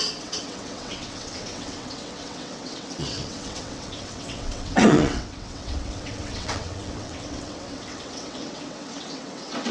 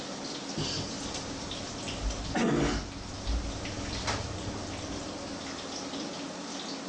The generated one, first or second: first